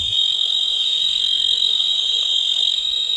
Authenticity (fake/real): fake